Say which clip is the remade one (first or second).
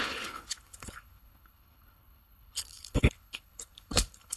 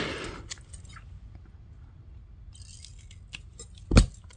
first